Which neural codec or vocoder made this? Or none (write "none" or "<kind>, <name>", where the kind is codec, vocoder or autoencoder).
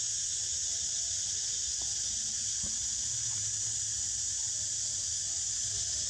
none